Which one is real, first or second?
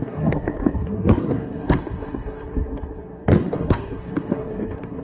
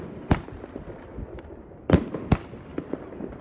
second